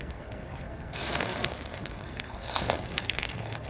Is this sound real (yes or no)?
no